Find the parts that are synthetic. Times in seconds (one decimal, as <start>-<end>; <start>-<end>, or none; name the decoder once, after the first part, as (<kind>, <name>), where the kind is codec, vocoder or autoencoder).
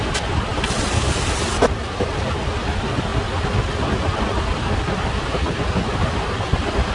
none